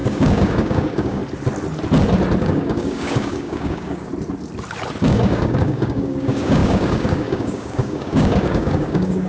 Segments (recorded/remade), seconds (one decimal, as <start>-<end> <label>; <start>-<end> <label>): 0.0-1.2 remade; 1.2-2.4 recorded; 2.4-4.1 remade; 4.1-5.0 recorded; 5.0-9.3 remade